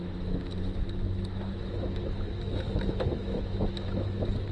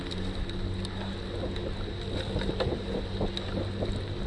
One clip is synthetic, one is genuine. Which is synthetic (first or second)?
first